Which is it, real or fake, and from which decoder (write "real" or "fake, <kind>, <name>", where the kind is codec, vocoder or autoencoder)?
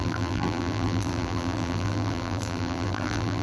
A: fake, vocoder, BigVGAN v2